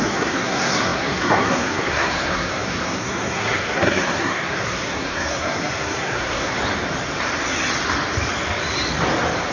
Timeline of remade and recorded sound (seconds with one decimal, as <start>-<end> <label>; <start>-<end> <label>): 0.0-6.6 remade; 6.6-9.5 recorded